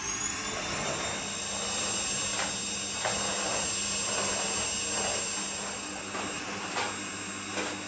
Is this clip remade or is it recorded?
recorded